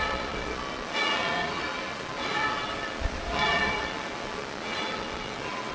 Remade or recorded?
remade